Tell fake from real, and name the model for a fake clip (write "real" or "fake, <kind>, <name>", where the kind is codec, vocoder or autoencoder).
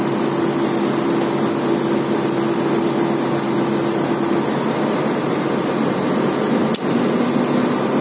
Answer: real